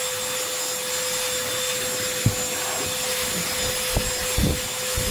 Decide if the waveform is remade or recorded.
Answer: recorded